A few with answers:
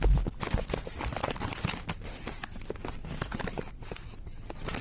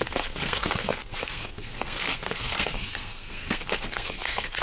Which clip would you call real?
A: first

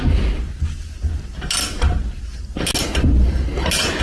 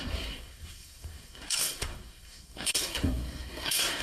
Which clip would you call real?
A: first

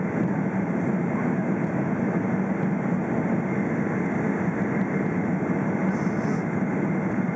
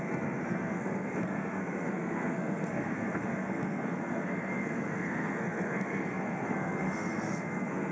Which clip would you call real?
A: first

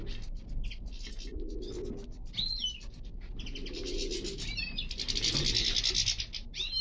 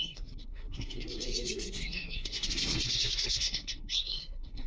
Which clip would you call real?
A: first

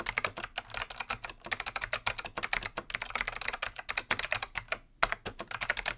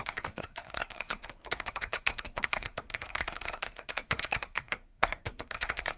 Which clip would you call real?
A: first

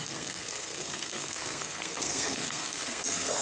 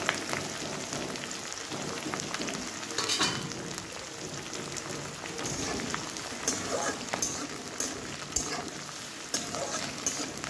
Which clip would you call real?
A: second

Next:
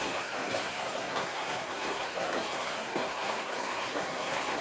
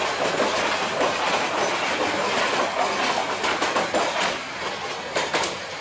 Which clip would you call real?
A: second